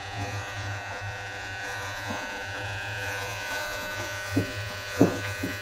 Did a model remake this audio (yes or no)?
yes